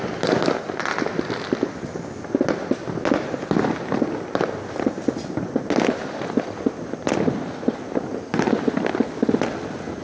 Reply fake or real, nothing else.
real